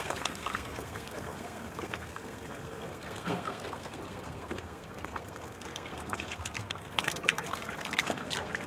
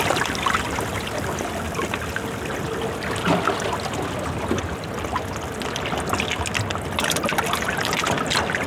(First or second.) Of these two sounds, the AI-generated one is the first